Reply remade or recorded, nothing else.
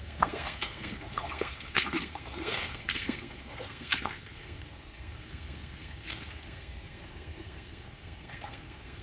remade